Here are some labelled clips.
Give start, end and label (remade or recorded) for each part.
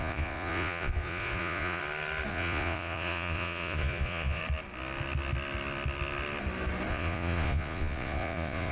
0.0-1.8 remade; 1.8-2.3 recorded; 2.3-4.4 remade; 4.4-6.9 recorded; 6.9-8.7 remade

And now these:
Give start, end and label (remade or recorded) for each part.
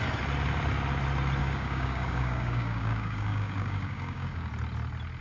0.0-1.4 recorded; 1.4-4.5 remade; 4.5-5.2 recorded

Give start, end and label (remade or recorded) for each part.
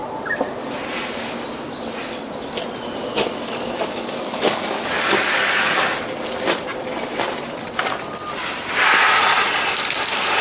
0.0-3.0 recorded; 3.0-5.8 remade; 5.8-10.4 recorded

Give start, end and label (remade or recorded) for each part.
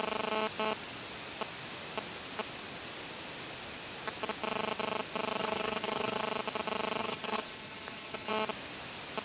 0.0-5.4 recorded; 5.4-6.2 remade; 6.2-7.0 recorded; 7.0-8.3 remade; 8.3-9.2 recorded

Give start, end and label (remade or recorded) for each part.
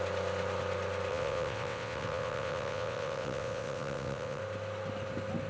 0.0-1.1 recorded; 1.1-4.4 remade; 4.4-5.5 recorded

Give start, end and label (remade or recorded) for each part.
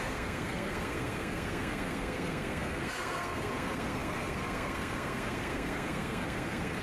0.0-6.8 remade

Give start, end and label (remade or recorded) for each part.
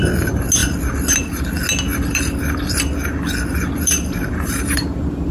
0.0-0.6 recorded; 0.6-1.1 remade; 1.1-1.9 recorded; 1.9-5.3 remade